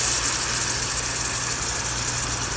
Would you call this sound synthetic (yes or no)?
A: no